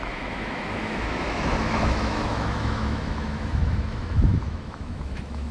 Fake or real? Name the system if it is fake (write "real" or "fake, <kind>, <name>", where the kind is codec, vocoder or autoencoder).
fake, autoencoder, DAC-VAE